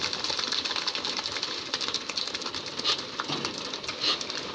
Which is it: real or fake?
real